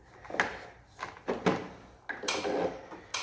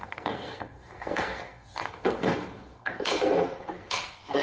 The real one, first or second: first